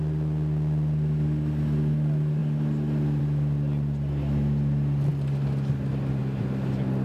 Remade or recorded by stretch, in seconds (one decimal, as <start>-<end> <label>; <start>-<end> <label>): 0.0-7.0 recorded